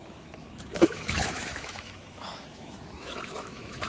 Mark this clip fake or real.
fake